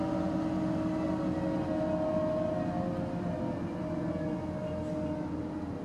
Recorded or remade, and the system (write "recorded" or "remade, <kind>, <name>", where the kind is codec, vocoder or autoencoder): recorded